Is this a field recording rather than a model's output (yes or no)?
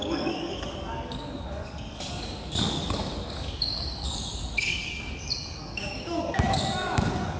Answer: no